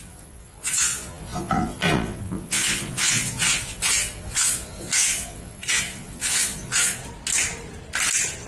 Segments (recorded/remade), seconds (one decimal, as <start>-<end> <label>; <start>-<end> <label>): 0.0-7.0 remade; 7.0-8.5 recorded